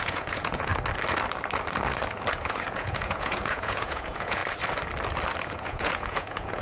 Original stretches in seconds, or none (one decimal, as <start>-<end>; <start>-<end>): 0.7-2.3; 4.4-5.5